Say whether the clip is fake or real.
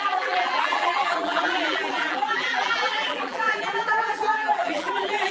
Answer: fake